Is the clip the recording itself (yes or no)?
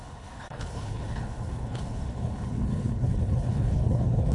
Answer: no